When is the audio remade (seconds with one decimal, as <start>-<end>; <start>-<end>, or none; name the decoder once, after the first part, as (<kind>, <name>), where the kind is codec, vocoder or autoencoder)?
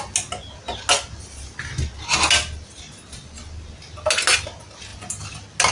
none